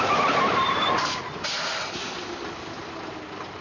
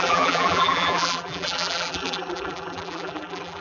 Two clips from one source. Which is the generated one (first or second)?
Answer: second